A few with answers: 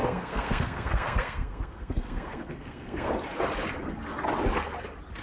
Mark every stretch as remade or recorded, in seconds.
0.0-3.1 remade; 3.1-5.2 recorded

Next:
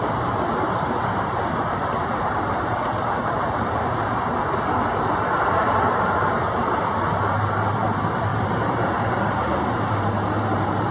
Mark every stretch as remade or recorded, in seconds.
0.0-10.9 remade

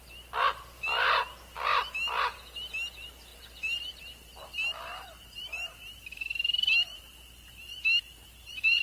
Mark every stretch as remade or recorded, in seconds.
0.0-3.3 recorded; 3.3-4.0 remade; 4.0-4.9 recorded; 4.9-8.8 remade

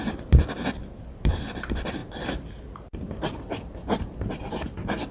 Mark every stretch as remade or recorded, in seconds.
0.0-5.1 recorded

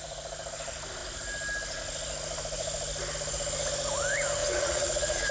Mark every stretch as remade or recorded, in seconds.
0.0-4.4 recorded; 4.4-5.3 remade

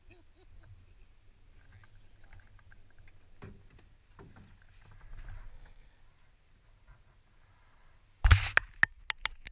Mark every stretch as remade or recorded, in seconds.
0.0-5.5 recorded; 5.5-6.0 remade; 6.0-9.5 recorded